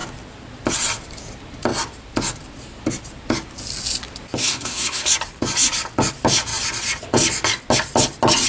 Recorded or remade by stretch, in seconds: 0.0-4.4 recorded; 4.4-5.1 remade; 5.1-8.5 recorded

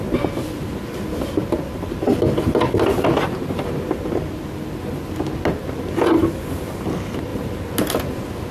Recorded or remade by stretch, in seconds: 0.0-8.5 recorded

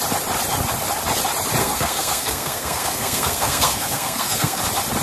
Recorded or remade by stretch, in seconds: 0.0-1.6 recorded; 1.6-4.6 remade; 4.6-5.0 recorded

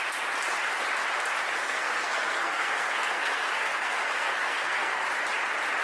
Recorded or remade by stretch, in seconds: 0.0-1.6 recorded; 1.6-5.1 remade; 5.1-5.8 recorded